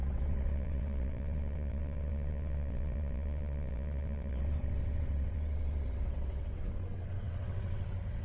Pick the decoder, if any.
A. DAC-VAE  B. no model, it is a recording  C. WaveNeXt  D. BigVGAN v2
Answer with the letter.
C